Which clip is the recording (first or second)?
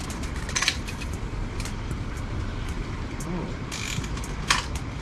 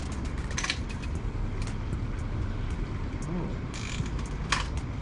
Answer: second